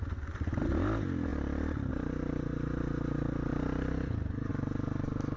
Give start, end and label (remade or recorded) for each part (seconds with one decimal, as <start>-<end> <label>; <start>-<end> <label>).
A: 0.0-5.4 recorded